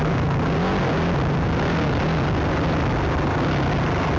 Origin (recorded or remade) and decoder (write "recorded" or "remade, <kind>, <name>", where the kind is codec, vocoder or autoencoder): recorded